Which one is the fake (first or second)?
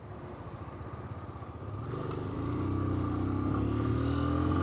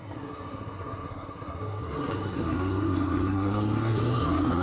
second